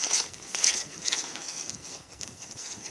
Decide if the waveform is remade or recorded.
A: remade